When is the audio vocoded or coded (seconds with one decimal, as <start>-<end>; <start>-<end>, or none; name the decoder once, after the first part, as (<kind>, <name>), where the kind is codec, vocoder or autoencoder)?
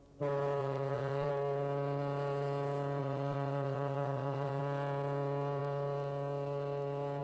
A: 0.6-1.3 (vocoder, Vocos); 3.0-4.6